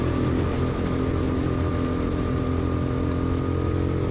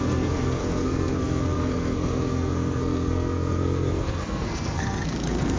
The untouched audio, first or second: first